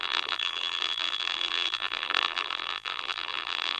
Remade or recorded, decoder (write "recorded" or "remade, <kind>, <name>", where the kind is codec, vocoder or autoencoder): remade, vocoder, BigVGAN v2